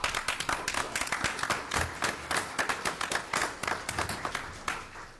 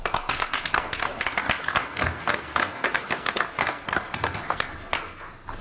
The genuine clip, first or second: first